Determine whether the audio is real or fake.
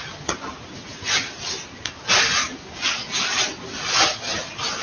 real